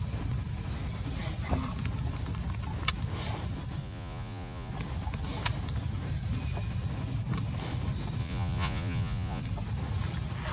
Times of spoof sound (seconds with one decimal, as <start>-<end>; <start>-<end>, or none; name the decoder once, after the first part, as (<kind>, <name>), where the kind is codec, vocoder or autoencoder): 3.8-4.7 (vocoder, Vocos); 8.2-9.4